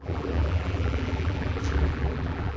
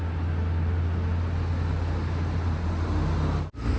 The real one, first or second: second